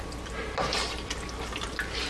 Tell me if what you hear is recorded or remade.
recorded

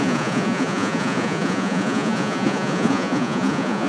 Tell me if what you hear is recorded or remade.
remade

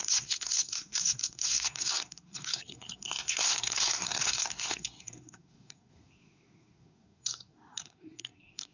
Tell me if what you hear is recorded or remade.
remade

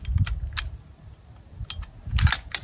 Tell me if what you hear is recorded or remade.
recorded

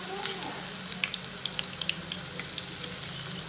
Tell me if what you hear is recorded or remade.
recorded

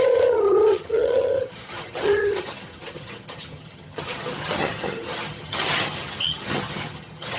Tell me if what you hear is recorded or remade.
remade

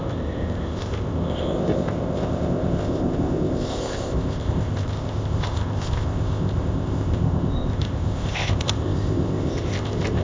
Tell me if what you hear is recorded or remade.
remade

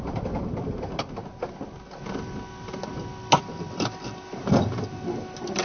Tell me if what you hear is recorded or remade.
recorded